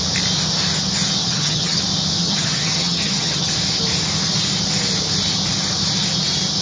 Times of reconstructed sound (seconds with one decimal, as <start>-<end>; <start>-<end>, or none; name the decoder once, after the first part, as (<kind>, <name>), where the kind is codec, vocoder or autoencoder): 1.2-1.8 (vocoder, HiFi-GAN); 2.2-3.5